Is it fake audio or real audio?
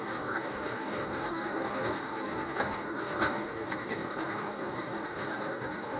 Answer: fake